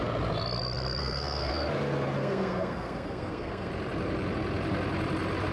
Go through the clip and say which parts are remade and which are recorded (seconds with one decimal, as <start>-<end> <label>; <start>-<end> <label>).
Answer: 0.0-1.0 recorded; 1.0-1.5 remade; 1.5-2.2 recorded; 2.2-3.7 remade; 3.7-5.5 recorded